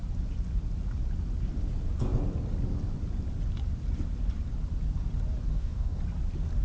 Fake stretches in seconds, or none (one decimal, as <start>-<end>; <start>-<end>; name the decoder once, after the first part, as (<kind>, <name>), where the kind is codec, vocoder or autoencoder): 5.5-6.0 (codec, DAC)